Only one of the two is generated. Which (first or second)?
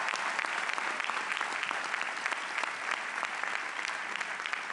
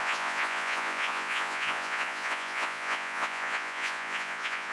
second